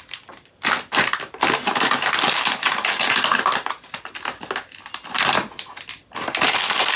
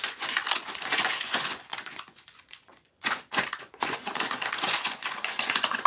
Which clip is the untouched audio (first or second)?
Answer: first